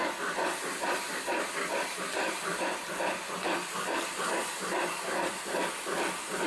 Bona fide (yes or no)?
yes